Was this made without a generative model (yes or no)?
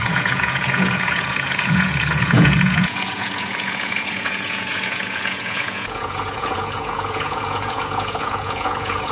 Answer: no